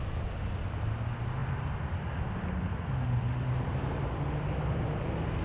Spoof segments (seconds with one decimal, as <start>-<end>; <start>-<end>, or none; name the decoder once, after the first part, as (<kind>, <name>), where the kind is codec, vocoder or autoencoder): none